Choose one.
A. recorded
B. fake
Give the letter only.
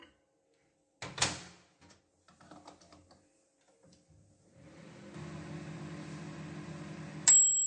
A